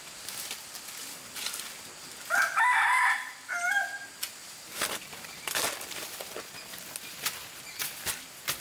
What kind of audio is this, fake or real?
real